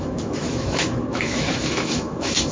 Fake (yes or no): yes